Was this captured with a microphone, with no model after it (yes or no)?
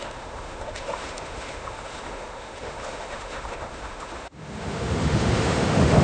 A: no